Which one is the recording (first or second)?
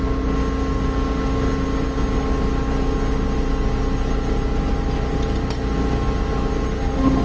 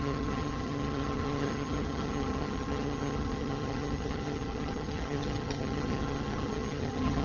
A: first